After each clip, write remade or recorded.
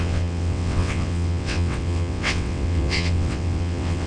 remade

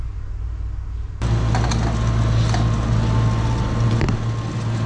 recorded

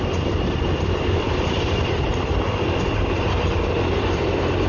remade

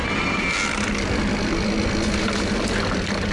recorded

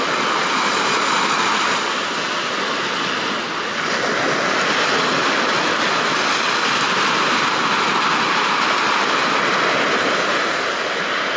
recorded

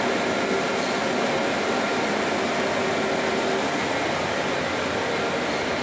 recorded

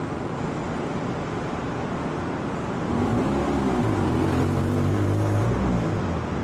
recorded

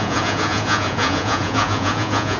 remade